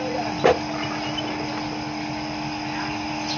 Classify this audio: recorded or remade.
recorded